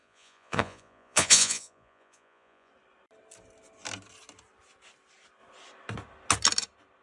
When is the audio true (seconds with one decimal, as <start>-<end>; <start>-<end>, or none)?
2.7-7.0